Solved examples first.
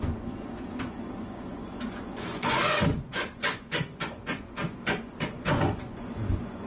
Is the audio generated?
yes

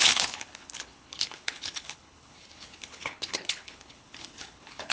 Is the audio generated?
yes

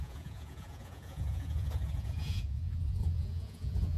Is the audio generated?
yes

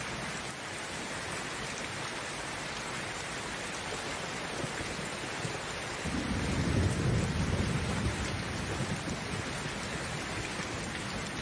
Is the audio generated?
no